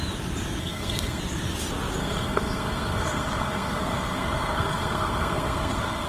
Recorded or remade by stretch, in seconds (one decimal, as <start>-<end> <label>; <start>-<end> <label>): 0.0-0.6 recorded; 0.6-1.2 remade; 1.2-2.0 recorded; 2.0-6.1 remade